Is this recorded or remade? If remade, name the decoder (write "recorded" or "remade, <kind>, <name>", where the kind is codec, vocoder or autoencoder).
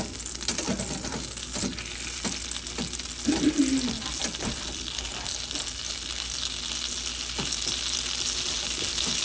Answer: recorded